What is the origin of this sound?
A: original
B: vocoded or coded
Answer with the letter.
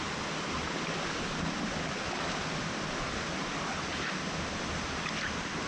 A